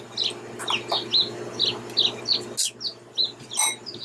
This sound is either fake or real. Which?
real